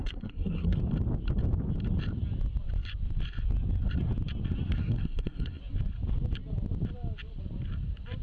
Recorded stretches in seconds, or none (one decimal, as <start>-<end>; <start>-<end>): 0.8-4.8; 5.6-8.2